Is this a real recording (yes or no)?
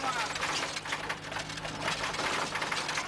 yes